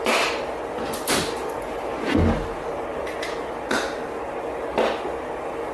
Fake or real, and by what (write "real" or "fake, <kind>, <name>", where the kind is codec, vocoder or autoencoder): real